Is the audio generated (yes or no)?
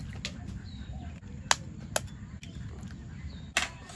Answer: no